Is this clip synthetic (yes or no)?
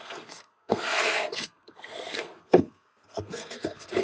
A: yes